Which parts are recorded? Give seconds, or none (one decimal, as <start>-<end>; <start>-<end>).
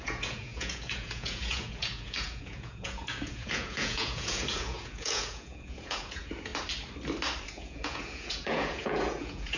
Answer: 6.5-7.4